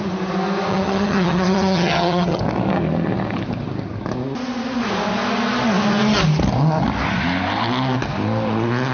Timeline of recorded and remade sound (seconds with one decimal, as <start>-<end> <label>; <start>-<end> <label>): 0.0-0.7 recorded; 0.7-2.4 remade; 2.4-8.9 recorded